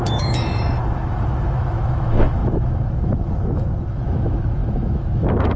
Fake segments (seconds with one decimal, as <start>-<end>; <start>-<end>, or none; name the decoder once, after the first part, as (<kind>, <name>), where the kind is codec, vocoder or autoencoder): 0.0-5.6 (autoencoder, DAC-VAE)